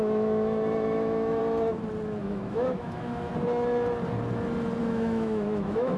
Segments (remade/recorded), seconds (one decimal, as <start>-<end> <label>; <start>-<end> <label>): 0.0-1.4 remade; 1.4-2.2 recorded; 2.2-3.3 remade; 3.3-4.8 recorded; 4.8-6.0 remade